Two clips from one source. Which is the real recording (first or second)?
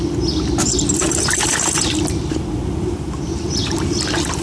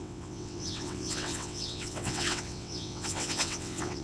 first